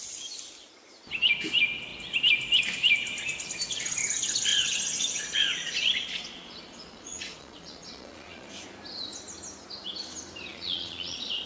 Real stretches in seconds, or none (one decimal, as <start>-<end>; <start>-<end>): 0.0-4.5; 8.5-10.5